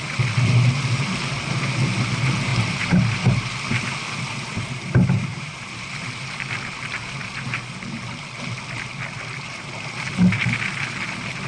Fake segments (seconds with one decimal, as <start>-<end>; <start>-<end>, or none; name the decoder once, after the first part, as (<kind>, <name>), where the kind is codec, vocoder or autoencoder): 2.5-3.2 (vocoder, BigVGAN v2); 5.3-5.9